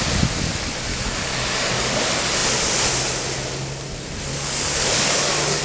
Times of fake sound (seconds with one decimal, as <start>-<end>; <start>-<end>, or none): 0.9-2.0; 4.3-5.6